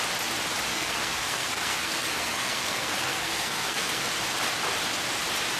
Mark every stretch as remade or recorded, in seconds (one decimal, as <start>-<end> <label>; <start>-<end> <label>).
0.0-0.7 recorded; 0.7-4.1 remade; 4.1-5.6 recorded